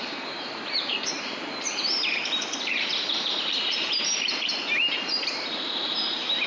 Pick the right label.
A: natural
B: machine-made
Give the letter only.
B